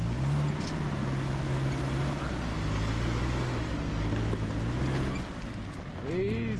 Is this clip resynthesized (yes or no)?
no